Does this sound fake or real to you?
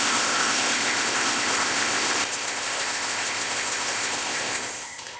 fake